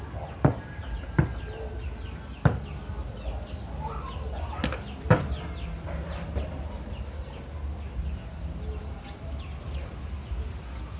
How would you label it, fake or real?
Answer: real